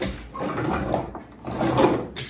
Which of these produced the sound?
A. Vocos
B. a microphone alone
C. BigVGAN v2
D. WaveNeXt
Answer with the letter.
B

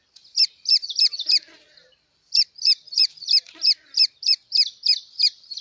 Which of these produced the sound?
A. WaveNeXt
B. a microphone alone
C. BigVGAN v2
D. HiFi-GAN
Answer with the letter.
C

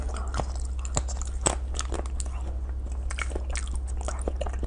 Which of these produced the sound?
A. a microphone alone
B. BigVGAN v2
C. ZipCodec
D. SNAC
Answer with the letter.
A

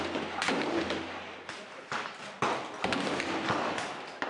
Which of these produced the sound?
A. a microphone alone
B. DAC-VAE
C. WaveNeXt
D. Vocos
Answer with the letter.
A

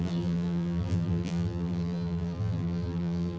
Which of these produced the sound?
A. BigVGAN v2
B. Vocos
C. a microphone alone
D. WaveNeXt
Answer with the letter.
A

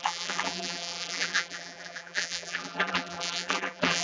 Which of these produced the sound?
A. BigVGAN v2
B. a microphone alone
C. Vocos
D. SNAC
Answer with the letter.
A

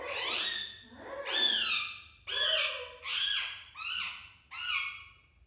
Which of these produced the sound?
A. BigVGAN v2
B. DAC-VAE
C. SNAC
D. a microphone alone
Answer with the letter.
D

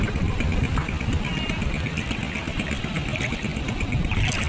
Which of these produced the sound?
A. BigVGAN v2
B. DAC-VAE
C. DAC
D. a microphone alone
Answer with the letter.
D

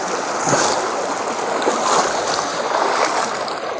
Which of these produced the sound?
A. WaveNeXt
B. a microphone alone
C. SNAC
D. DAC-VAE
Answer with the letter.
B